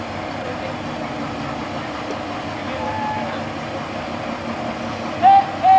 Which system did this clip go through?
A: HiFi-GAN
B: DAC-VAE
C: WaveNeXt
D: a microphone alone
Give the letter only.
D